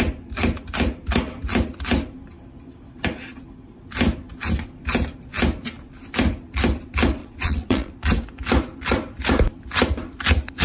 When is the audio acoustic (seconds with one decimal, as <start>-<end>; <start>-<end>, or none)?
0.0-7.2; 7.9-10.6